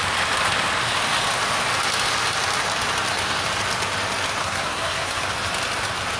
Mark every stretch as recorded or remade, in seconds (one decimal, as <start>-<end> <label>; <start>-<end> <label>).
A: 0.0-4.4 recorded; 4.4-5.2 remade; 5.2-6.2 recorded